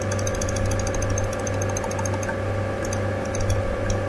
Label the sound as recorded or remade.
recorded